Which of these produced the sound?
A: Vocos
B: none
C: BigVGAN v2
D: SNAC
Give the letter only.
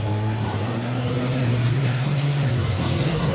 D